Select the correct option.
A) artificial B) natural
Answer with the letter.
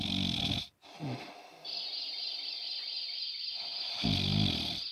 B